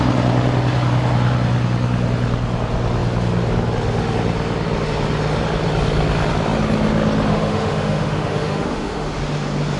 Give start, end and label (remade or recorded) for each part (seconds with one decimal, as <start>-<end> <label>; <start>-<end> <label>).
0.0-7.3 recorded; 7.3-9.2 remade; 9.2-9.8 recorded